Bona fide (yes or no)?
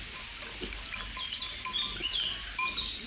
yes